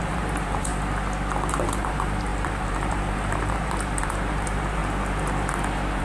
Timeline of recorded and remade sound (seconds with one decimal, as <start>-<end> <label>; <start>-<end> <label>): 0.0-0.7 remade; 0.7-1.5 recorded; 1.5-4.8 remade; 4.8-6.0 recorded